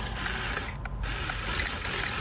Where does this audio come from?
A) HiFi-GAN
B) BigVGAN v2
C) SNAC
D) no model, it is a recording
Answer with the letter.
D